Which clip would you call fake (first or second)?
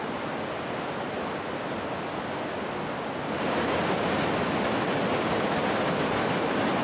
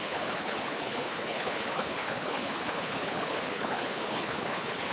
second